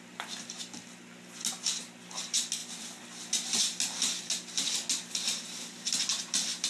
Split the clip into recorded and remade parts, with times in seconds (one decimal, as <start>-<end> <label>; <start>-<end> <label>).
0.0-6.7 recorded